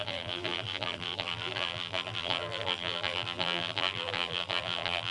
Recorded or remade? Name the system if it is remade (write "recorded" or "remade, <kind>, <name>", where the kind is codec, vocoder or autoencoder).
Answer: remade, vocoder, BigVGAN v2